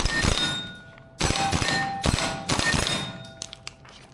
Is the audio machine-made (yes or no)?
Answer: no